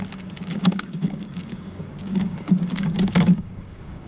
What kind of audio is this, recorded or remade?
remade